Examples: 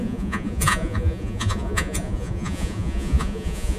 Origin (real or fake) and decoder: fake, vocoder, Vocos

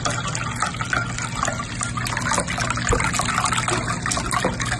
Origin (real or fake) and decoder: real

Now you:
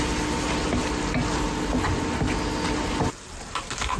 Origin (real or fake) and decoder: real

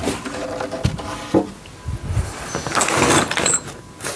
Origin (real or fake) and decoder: real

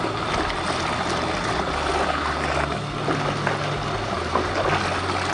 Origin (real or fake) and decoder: real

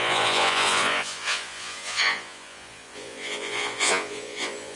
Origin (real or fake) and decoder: fake, vocoder, Vocos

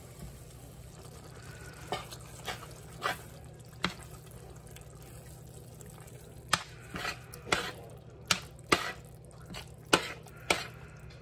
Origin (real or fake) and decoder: real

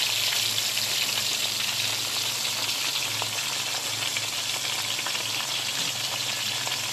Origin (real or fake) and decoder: real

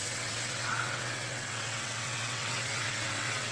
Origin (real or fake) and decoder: fake, vocoder, WaveNeXt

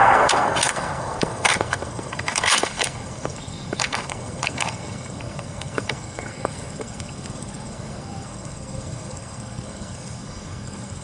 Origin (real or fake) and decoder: fake, codec, SNAC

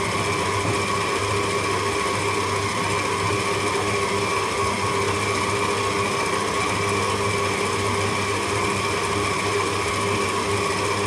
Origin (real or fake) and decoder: real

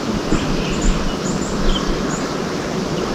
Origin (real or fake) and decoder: real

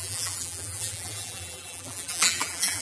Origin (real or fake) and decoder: fake, vocoder, BigVGAN v2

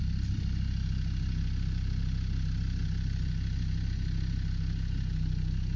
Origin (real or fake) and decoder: real